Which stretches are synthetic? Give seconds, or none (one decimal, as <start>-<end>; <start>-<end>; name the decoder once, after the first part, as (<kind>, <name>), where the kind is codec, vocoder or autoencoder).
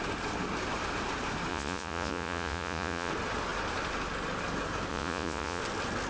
1.5-3.1 (vocoder, Vocos); 4.9-5.6